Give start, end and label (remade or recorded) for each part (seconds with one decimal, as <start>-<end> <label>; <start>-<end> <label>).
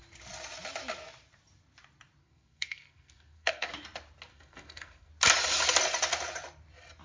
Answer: 0.0-2.2 recorded; 2.2-3.7 remade; 3.7-4.3 recorded; 4.3-5.1 remade; 5.1-7.0 recorded